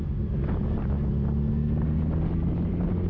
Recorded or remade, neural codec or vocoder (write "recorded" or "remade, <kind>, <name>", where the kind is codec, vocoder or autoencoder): recorded